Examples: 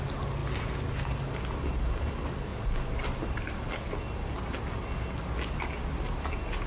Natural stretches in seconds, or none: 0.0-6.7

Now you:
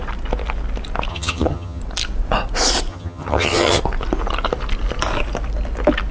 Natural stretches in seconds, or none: 0.0-1.1; 1.8-2.9; 3.8-6.1

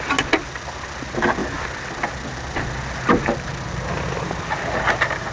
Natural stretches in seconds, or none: 0.0-5.3